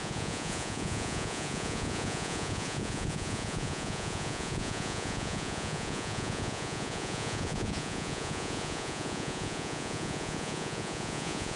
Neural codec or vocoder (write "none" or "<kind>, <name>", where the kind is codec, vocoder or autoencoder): vocoder, Vocos